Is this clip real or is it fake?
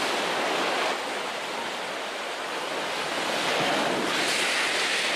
real